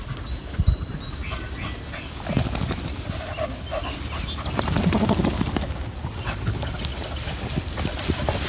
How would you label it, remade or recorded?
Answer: recorded